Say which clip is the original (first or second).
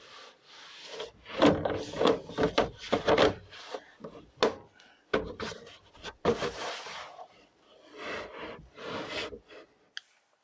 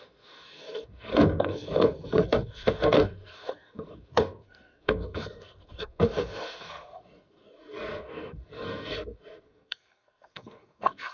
first